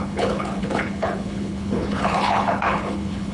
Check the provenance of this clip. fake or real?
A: fake